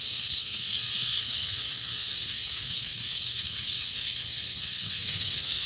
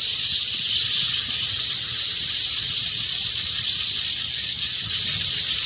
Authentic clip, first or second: second